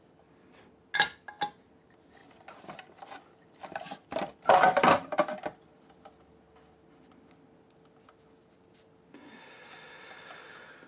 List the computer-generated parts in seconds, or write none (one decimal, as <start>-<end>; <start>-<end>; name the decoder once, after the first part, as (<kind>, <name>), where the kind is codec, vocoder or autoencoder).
none